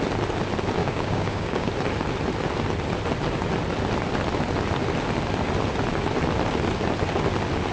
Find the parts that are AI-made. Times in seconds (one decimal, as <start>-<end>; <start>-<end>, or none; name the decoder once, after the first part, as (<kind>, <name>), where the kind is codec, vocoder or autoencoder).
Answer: 0.8-1.7 (codec, DAC)